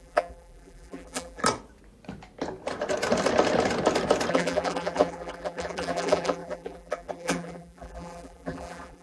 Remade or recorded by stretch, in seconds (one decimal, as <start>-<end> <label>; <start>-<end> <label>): 0.0-1.4 remade; 1.4-4.3 recorded; 4.3-9.0 remade